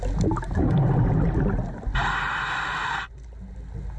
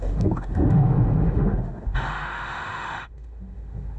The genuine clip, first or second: first